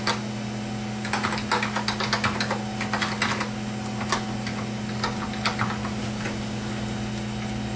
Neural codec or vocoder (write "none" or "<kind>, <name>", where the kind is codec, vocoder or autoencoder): none